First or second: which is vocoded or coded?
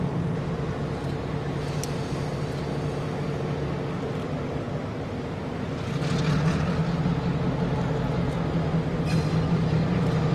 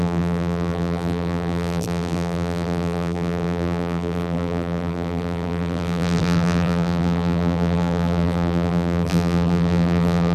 second